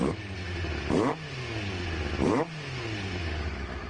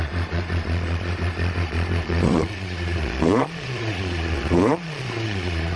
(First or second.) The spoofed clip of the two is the second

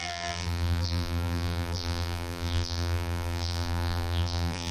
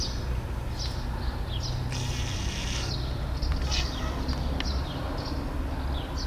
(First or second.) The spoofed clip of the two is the first